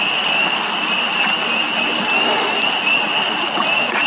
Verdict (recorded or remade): recorded